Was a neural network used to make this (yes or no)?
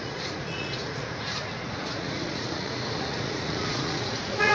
yes